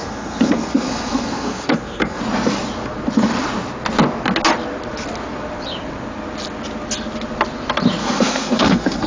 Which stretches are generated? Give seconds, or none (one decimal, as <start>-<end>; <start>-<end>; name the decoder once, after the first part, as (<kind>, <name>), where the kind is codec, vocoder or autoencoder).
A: 0.0-2.2 (codec, SNAC); 8.0-9.1